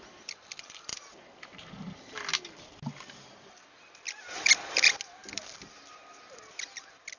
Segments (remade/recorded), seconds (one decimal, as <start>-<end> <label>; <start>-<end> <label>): 0.0-7.2 recorded